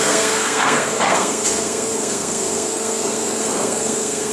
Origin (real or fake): fake